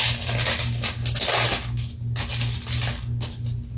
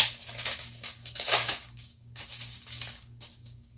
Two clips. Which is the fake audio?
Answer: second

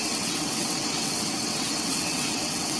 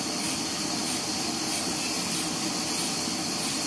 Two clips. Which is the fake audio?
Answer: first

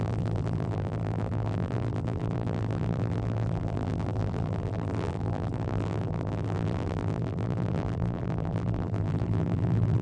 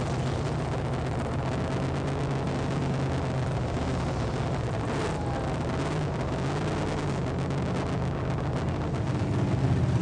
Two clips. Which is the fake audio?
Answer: first